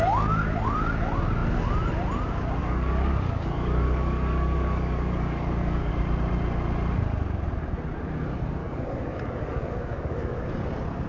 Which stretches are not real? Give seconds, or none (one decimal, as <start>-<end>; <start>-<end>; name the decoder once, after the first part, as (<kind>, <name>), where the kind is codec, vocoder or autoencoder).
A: 2.6-5.9 (codec, DAC); 8.6-10.5

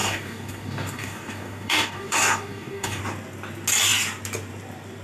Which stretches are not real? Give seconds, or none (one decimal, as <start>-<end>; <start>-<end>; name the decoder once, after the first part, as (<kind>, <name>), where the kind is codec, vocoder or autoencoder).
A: 0.0-3.0 (codec, DAC)